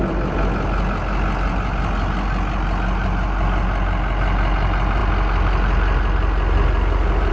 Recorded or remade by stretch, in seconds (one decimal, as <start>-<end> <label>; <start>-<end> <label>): 0.0-7.3 recorded